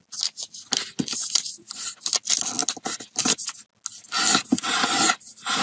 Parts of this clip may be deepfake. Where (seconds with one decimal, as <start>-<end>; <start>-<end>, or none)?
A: none